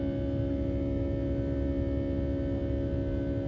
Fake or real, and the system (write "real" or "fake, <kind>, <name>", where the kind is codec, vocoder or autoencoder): real